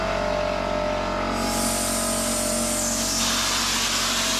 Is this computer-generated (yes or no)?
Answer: no